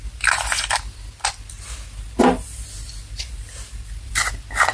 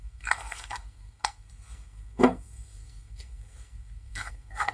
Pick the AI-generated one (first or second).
second